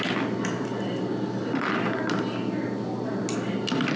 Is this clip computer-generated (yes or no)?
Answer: no